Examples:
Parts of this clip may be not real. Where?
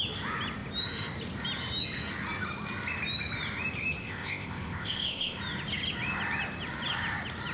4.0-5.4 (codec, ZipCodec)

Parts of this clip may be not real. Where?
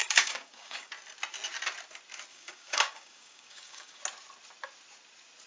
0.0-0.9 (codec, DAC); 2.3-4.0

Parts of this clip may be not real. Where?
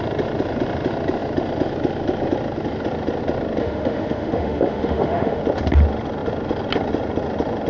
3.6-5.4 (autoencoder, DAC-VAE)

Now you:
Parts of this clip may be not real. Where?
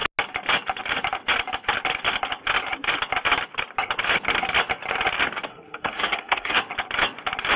5.5-6.6 (codec, SNAC)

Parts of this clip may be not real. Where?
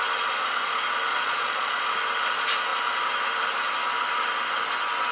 1.1-1.8 (vocoder, Vocos)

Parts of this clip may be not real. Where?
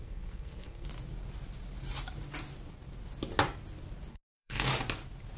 0.0-0.9 (codec, SNAC); 4.1-4.7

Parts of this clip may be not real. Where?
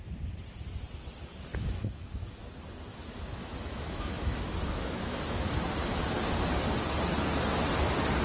1.5-2.4 (autoencoder, DAC-VAE); 2.9-5.5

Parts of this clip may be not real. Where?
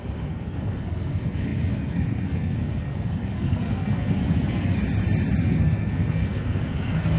0.0-4.8 (codec, SNAC); 5.4-7.2